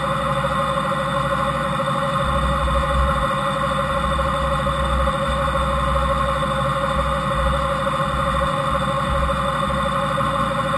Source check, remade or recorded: recorded